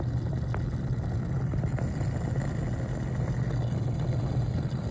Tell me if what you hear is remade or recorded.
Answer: recorded